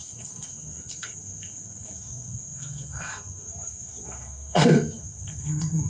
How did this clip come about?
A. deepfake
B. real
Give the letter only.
A